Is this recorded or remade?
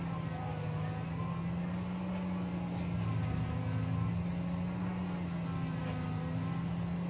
recorded